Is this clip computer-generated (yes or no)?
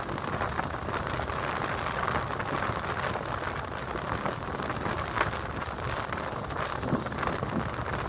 no